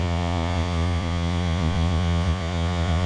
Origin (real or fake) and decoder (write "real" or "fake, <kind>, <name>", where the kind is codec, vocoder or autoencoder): fake, vocoder, Vocos